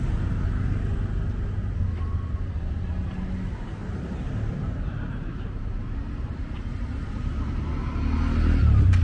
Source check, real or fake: real